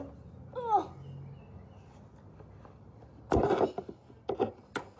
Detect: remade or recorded recorded